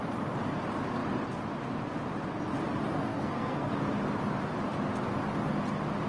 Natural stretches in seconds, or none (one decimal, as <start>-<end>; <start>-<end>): 0.0-3.1; 3.7-6.1